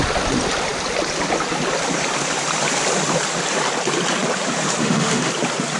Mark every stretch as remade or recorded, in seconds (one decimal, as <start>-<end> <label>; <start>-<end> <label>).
0.0-4.8 recorded; 4.8-5.3 remade; 5.3-5.8 recorded